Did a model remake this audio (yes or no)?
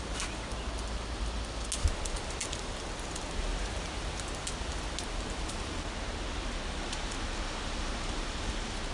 no